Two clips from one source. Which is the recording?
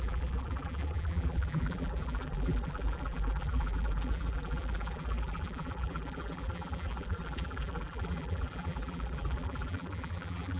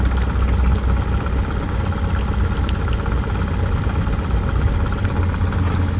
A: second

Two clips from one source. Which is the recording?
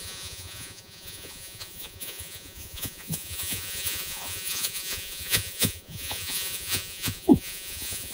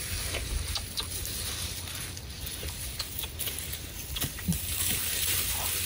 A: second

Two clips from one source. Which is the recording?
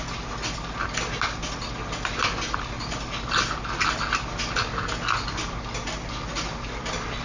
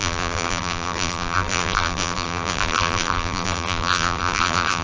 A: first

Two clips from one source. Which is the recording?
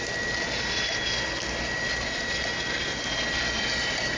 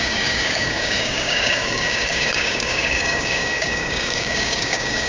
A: first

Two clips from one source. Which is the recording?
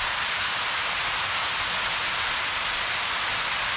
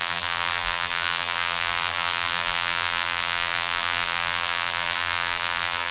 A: first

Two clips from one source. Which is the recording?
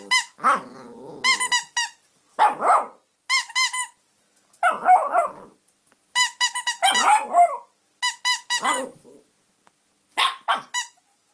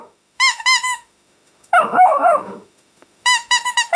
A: first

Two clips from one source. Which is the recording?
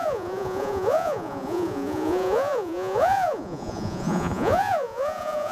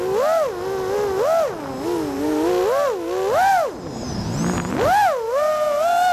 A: second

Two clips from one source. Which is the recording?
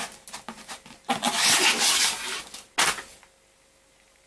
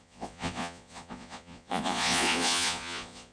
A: first